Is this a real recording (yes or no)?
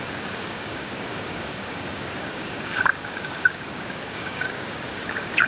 no